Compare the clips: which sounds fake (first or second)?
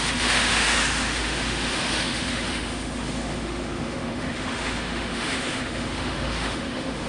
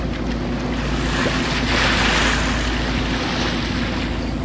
first